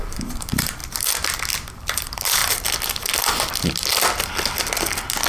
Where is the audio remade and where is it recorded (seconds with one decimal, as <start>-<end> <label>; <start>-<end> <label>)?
0.0-0.8 remade; 0.8-1.8 recorded; 1.8-2.4 remade; 2.4-5.3 recorded

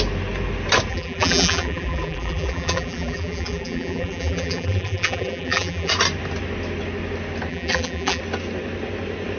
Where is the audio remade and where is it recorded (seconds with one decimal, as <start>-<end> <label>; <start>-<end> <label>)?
0.0-0.9 recorded; 0.9-5.9 remade; 5.9-7.5 recorded; 7.5-8.2 remade; 8.2-9.4 recorded

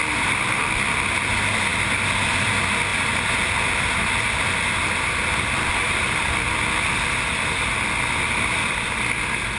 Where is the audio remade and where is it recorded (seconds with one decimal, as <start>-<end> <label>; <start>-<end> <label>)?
0.0-9.6 recorded

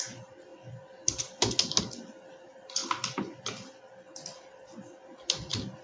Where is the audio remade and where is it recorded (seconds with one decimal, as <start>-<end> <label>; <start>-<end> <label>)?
0.0-5.8 recorded